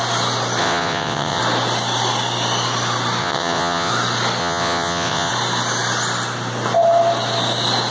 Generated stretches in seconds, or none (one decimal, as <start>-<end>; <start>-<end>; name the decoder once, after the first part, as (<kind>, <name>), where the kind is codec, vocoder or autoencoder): 0.6-1.4 (vocoder, WaveNeXt); 3.2-3.9; 4.4-5.3